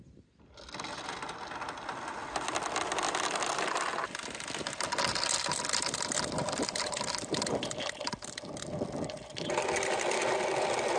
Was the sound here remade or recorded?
recorded